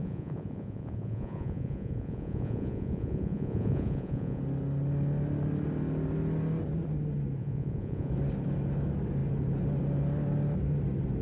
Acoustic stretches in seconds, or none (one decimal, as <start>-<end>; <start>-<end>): 4.4-7.4; 8.1-11.2